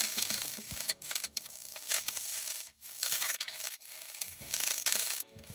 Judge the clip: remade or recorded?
remade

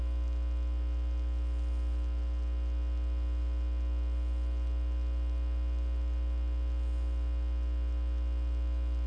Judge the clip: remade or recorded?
recorded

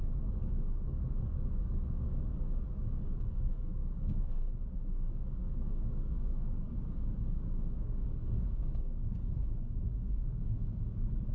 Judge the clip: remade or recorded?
remade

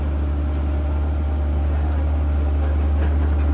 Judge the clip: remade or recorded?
recorded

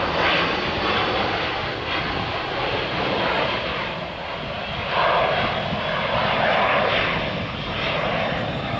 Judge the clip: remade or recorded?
recorded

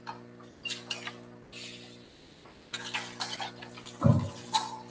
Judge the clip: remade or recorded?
recorded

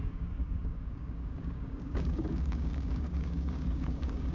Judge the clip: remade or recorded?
remade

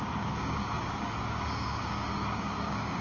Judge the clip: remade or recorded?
remade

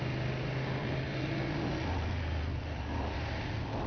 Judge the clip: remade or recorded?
recorded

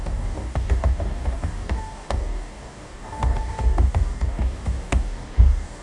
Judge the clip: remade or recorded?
remade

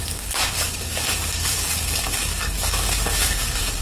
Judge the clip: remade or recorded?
remade